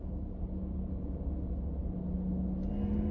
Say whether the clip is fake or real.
real